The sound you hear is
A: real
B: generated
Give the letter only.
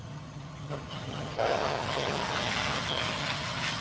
B